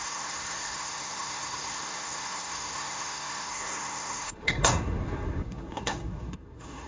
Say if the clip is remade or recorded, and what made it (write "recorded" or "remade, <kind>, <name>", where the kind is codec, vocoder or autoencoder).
remade, codec, SNAC